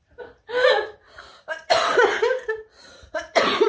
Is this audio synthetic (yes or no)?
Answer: no